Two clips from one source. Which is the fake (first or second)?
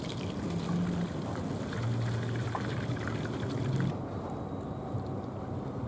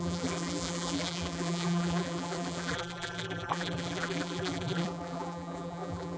second